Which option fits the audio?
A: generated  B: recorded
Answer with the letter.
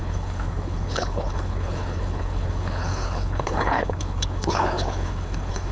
A